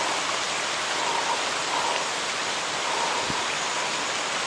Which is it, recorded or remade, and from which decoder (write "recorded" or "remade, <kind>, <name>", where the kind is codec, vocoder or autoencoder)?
recorded